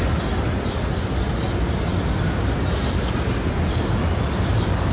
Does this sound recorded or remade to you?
recorded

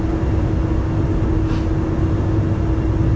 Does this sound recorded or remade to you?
recorded